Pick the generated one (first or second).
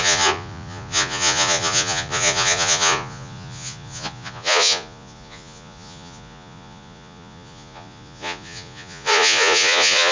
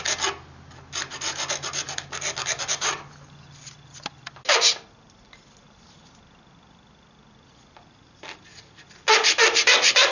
first